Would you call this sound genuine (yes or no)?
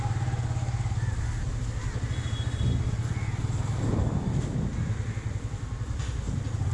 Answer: yes